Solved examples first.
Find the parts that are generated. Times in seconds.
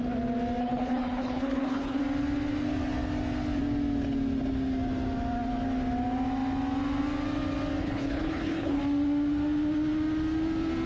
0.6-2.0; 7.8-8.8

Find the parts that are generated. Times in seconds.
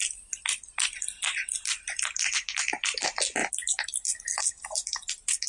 none